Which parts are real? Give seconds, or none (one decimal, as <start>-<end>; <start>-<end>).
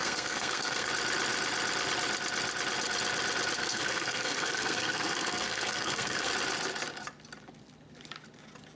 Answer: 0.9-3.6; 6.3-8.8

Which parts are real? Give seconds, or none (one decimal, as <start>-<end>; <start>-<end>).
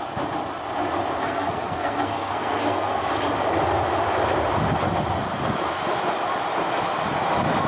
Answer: 0.0-1.2; 3.1-7.7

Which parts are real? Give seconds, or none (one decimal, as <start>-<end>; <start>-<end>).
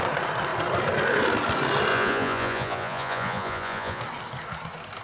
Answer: 0.0-1.9; 4.0-5.0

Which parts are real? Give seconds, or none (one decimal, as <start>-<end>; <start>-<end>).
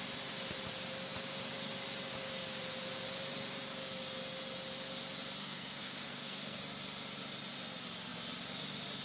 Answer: 0.0-5.4; 6.6-9.0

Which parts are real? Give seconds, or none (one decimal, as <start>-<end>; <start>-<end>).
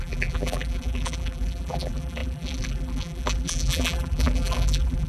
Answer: none